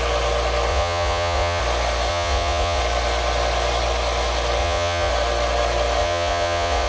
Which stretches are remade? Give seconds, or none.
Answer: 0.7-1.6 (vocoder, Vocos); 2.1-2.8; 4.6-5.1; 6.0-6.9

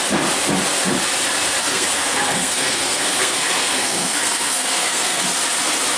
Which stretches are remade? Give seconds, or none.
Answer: 1.6-5.2 (codec, SNAC)